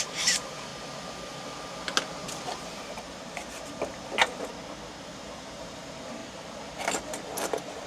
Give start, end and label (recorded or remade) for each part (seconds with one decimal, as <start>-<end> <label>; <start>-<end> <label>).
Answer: 0.0-0.7 remade; 0.7-2.0 recorded; 2.0-4.5 remade; 4.5-5.1 recorded; 5.1-6.2 remade; 6.2-6.9 recorded; 6.9-7.9 remade